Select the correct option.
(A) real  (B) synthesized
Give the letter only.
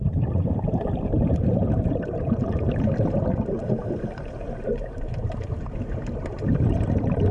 B